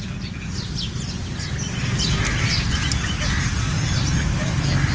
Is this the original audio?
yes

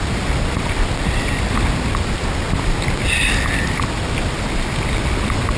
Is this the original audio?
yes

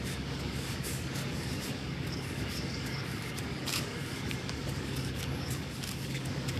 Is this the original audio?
no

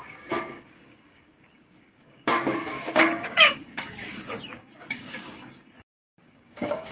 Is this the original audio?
no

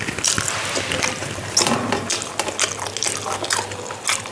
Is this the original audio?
yes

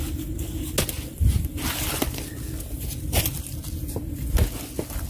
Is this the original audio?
yes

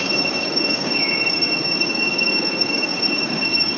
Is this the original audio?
no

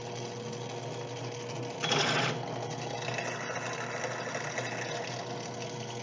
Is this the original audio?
yes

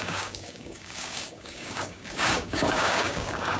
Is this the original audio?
no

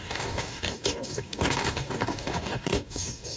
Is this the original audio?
no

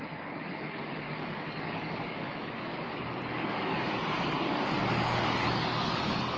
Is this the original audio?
no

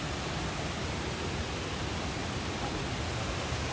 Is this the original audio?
yes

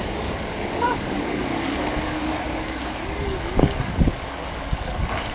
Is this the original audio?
no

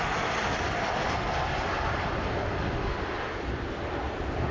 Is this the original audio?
yes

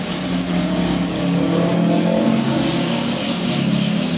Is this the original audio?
no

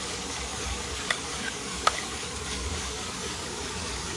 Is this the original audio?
no